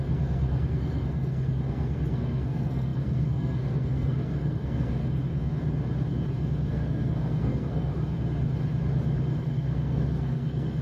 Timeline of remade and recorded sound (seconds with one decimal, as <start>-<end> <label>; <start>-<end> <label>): 0.0-5.0 remade; 5.0-6.7 recorded; 6.7-7.9 remade; 7.9-9.4 recorded; 9.4-10.8 remade